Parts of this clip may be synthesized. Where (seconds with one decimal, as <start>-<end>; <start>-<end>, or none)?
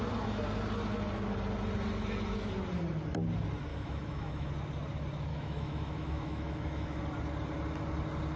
3.7-4.5; 5.3-7.0